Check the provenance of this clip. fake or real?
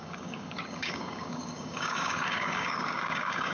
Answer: fake